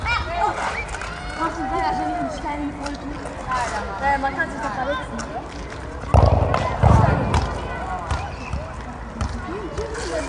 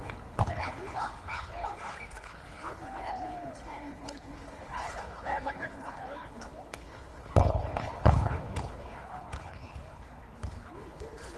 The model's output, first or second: second